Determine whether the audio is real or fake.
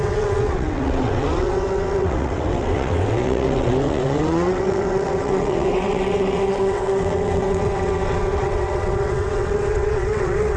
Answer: fake